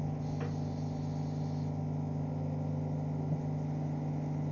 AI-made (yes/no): no